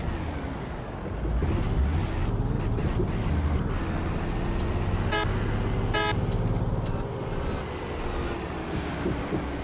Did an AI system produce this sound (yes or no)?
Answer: no